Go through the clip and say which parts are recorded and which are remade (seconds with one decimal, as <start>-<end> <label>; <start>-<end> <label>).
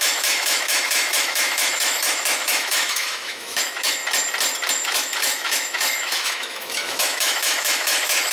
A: 0.0-4.0 remade; 4.0-4.7 recorded; 4.7-8.3 remade